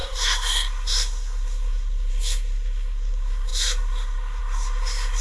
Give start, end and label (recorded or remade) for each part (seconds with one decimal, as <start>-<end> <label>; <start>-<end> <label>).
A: 0.0-5.2 remade